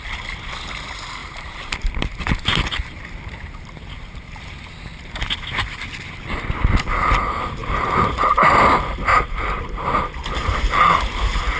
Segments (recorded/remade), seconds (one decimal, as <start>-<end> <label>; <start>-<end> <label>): 0.0-1.2 recorded; 1.2-4.4 remade; 4.4-7.6 recorded; 7.6-8.5 remade; 8.5-9.1 recorded; 9.1-11.1 remade; 11.1-11.6 recorded